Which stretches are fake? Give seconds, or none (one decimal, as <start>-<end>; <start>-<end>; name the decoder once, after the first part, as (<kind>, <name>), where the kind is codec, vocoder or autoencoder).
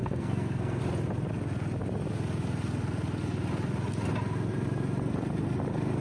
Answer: 0.0-0.8 (codec, SNAC)